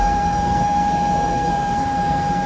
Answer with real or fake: fake